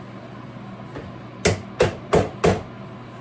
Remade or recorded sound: recorded